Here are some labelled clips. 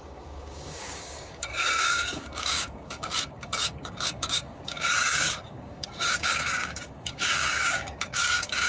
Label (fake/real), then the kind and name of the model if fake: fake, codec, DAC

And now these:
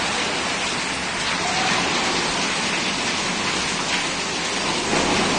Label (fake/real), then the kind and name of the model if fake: real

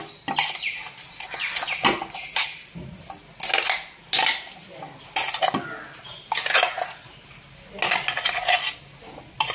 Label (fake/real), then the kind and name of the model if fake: real